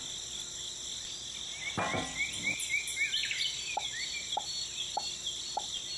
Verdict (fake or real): real